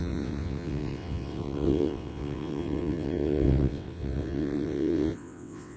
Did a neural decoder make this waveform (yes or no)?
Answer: yes